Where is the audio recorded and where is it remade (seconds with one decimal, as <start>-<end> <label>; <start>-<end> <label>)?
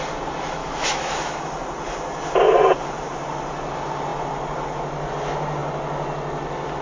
0.0-0.6 recorded; 0.6-1.4 remade; 1.4-6.8 recorded